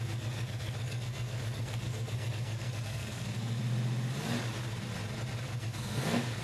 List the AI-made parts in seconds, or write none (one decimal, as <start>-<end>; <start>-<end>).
0.0-3.6; 5.4-6.4